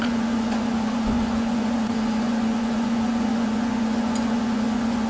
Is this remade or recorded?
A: remade